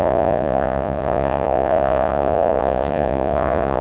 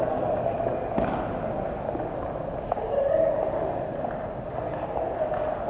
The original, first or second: second